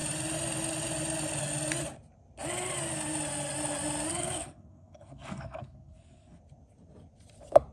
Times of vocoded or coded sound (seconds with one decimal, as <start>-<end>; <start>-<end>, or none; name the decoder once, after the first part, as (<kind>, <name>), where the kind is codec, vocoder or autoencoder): 4.1-6.4 (codec, SNAC)